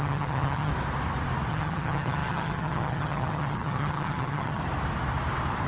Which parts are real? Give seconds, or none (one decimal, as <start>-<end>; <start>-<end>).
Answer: 0.7-1.5; 4.6-5.7